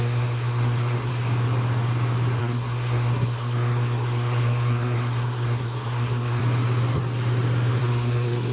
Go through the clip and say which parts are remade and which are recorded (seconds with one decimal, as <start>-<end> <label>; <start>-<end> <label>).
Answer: 0.0-1.1 remade; 1.1-2.4 recorded; 2.4-6.4 remade; 6.4-7.8 recorded; 7.8-8.5 remade